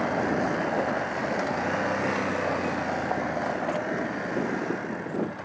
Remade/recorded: recorded